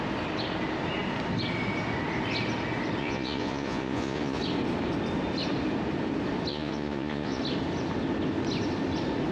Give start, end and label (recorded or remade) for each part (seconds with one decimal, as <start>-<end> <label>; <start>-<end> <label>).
0.0-3.0 recorded; 3.0-4.4 remade; 4.4-6.5 recorded; 6.5-7.4 remade; 7.4-9.3 recorded